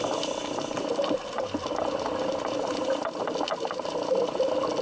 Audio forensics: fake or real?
real